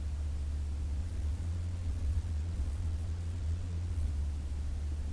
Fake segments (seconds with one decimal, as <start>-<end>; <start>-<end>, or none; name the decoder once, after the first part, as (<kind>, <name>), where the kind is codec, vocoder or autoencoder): 1.0-4.1 (vocoder, Vocos)